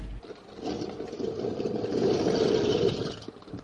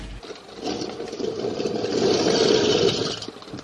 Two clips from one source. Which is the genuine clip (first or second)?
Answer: first